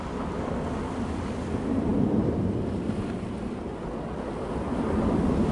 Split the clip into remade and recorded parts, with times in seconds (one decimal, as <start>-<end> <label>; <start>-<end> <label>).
0.0-5.5 recorded